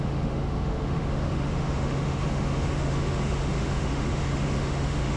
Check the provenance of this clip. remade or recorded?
remade